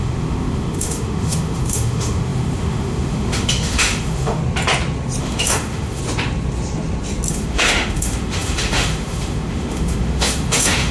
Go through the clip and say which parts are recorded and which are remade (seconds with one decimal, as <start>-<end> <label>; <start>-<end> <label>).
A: 0.0-4.4 remade; 4.4-5.2 recorded; 5.2-6.0 remade; 6.0-7.3 recorded; 7.3-10.9 remade